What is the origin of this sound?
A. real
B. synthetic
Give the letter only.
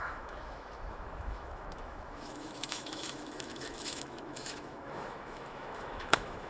B